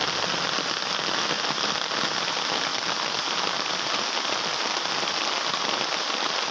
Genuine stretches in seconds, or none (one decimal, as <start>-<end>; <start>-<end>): 0.0-6.5